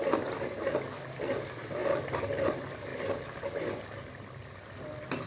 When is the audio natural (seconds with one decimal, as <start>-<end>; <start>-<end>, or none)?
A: 0.0-5.3